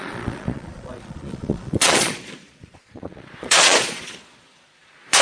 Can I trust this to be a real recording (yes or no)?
no